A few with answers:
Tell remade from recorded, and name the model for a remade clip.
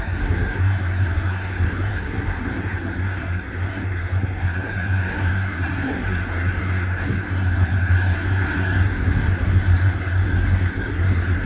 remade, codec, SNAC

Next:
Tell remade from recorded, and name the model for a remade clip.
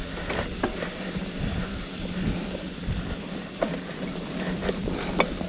recorded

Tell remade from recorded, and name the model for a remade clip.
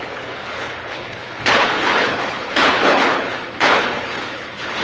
remade, codec, HILCodec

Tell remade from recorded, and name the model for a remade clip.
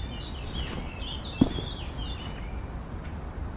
recorded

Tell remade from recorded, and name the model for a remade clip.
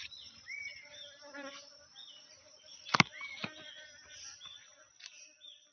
recorded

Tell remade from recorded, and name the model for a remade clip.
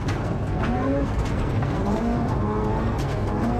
remade, codec, SNAC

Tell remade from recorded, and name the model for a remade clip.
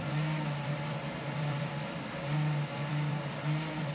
remade, vocoder, BigVGAN v2